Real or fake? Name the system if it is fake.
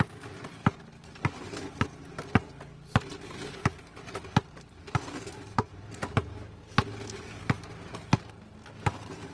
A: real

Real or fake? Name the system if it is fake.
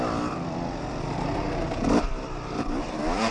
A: fake, vocoder, BigVGAN v2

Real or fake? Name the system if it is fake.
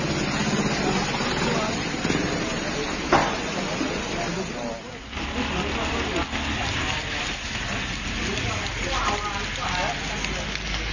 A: real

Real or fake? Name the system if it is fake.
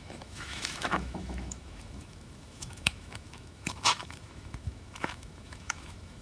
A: fake, autoencoder, DAC-VAE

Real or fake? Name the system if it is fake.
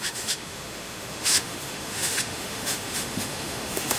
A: fake, autoencoder, DAC-VAE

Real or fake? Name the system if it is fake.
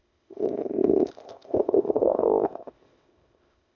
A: fake, codec, ZipCodec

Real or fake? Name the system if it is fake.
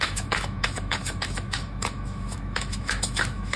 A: fake, autoencoder, DAC-VAE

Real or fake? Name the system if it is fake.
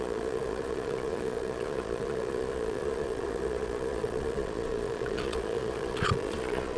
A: fake, vocoder, Vocos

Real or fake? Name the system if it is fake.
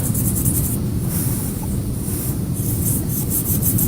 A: fake, vocoder, BigVGAN v2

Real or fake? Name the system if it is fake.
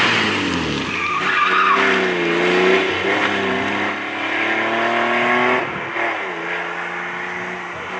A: real